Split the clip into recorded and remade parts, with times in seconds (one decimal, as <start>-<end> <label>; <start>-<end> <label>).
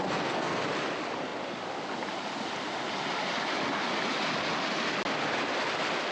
0.0-0.6 remade; 0.6-6.1 recorded